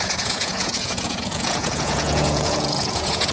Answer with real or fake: fake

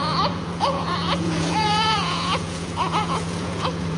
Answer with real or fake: fake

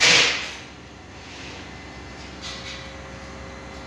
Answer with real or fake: real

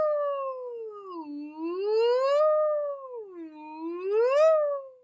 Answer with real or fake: real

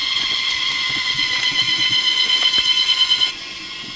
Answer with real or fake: fake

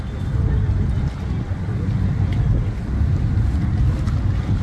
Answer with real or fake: real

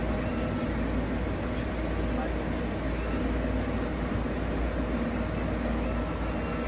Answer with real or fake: real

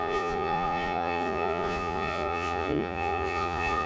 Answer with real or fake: fake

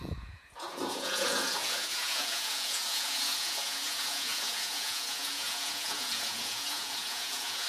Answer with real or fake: fake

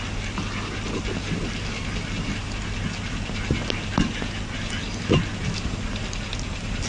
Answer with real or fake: real